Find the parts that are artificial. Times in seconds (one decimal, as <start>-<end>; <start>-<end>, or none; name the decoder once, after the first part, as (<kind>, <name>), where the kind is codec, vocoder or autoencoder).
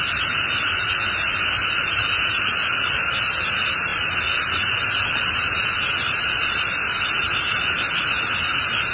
none